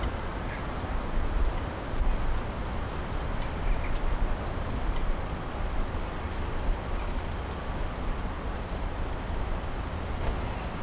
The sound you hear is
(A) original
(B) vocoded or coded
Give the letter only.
A